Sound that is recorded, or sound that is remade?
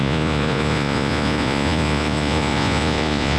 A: remade